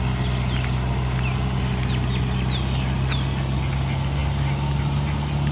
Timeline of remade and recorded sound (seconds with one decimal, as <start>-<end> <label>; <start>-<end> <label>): 0.0-5.5 recorded